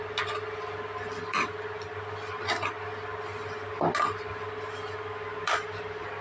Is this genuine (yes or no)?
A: yes